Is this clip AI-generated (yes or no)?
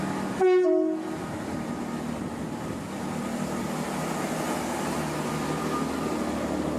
no